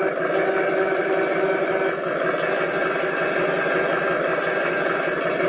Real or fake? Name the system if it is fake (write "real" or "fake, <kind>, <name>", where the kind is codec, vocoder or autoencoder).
real